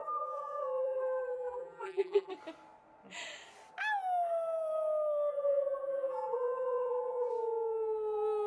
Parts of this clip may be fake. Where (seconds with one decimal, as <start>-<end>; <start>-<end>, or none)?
0.0-2.3; 5.3-7.3